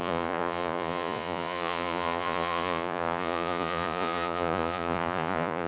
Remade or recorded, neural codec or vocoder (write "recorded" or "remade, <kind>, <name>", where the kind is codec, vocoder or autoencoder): remade, vocoder, Vocos